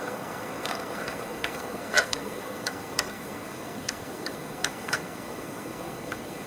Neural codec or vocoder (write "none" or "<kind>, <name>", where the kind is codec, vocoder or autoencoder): codec, SNAC